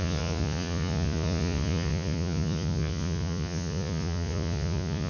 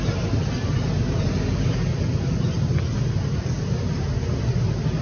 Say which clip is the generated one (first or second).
first